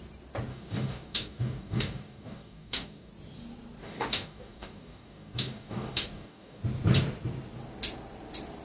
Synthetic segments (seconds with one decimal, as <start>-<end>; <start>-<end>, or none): 0.5-3.1; 3.8-6.6